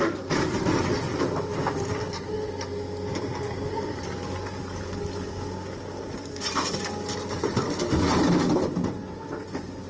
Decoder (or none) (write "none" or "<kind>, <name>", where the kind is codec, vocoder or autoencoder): none